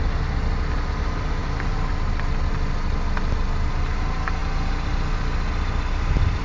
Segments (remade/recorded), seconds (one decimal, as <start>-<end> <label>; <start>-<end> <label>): 0.0-6.4 recorded